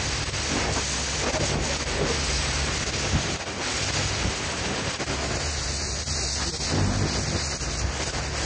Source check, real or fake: real